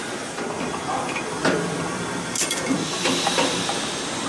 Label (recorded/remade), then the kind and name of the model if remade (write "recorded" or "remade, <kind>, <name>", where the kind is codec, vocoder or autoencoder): remade, vocoder, BigVGAN v2